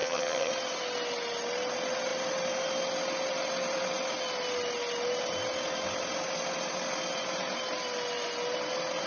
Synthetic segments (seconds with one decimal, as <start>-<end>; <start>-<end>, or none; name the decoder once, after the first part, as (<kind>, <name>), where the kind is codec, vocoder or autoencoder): 0.0-0.5 (vocoder, HiFi-GAN)